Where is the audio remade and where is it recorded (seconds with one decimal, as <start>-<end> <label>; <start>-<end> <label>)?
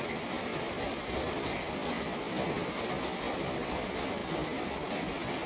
0.0-0.5 remade; 0.5-1.3 recorded; 1.3-1.8 remade; 1.8-3.7 recorded; 3.7-4.2 remade; 4.2-5.5 recorded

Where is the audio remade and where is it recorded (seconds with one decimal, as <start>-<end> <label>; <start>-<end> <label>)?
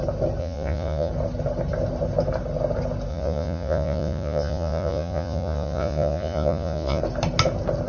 0.0-0.4 recorded; 0.4-1.1 remade; 1.1-3.1 recorded; 3.1-7.0 remade; 7.0-7.9 recorded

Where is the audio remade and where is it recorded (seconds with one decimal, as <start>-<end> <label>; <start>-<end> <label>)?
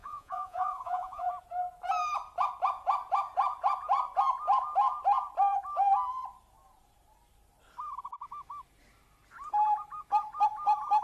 0.0-1.3 remade; 1.3-11.0 recorded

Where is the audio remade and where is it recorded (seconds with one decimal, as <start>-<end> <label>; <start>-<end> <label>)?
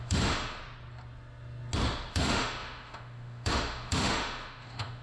0.0-0.6 remade; 0.6-2.1 recorded; 2.1-5.0 remade